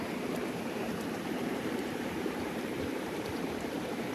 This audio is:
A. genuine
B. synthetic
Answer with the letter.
B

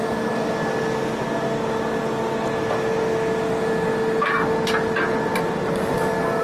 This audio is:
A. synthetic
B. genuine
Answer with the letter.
B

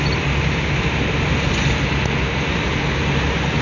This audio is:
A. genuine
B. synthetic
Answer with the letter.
A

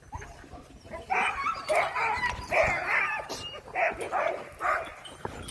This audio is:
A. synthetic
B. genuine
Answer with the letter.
A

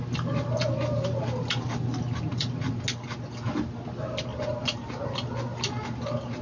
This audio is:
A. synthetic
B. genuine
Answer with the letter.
B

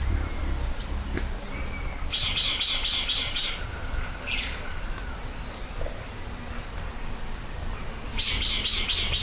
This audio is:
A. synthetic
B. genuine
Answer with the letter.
B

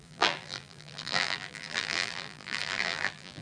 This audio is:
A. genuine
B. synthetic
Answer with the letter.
B